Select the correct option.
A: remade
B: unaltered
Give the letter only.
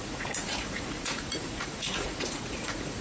A